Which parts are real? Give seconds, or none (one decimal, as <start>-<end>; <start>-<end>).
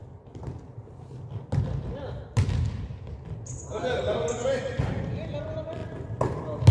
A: 0.0-6.7